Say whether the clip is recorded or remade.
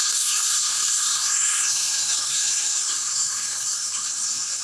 remade